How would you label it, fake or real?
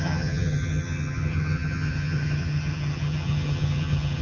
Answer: fake